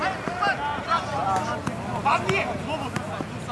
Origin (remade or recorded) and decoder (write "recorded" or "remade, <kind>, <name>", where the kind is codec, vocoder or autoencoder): recorded